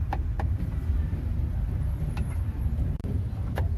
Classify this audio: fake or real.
fake